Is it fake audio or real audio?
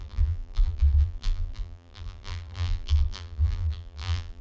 fake